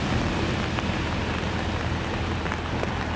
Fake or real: real